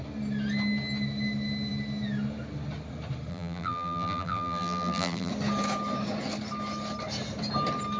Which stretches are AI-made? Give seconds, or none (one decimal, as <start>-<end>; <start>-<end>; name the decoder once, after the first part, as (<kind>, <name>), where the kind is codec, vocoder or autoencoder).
3.3-5.3 (vocoder, BigVGAN v2)